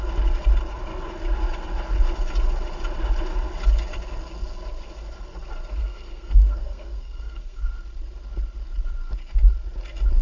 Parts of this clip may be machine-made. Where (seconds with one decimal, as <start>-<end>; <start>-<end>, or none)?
5.8-7.6